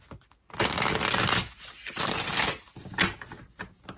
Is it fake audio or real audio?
real